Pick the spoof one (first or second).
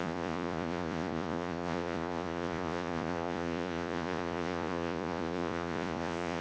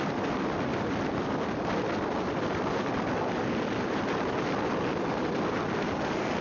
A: first